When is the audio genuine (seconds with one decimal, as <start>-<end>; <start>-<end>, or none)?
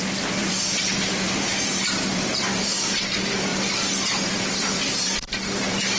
none